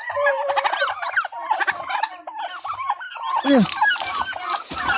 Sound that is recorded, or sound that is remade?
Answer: recorded